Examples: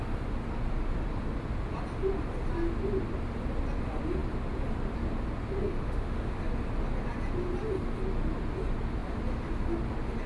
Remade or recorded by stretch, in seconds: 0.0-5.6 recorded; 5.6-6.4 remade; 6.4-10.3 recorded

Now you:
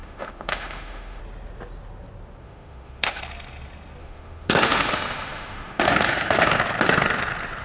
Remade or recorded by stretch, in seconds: 0.0-1.2 remade; 1.2-2.4 recorded; 2.4-3.2 remade; 3.2-4.0 recorded; 4.0-6.6 remade; 6.6-7.6 recorded